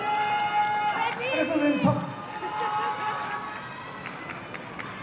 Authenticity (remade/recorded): recorded